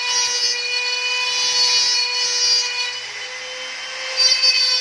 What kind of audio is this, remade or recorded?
recorded